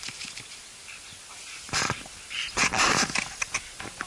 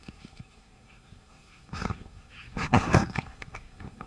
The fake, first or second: second